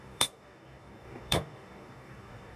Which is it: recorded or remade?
remade